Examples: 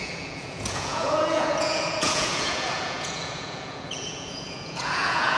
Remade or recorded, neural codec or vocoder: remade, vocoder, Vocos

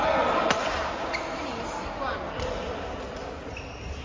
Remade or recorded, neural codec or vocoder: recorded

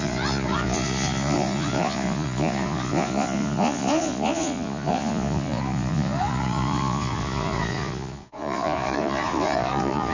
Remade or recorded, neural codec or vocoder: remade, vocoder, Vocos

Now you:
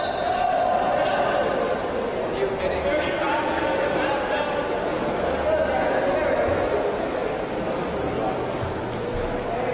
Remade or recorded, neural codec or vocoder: recorded